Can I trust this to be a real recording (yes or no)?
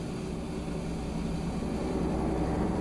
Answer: yes